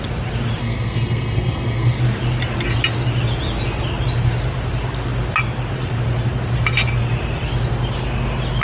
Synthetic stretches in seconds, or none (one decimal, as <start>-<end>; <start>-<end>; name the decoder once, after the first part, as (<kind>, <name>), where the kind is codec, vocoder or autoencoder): 0.6-2.0 (codec, SNAC)